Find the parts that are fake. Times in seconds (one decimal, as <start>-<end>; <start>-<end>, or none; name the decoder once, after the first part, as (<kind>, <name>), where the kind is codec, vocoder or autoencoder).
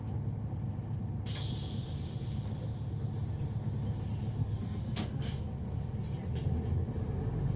4.4-5.5 (codec, SNAC)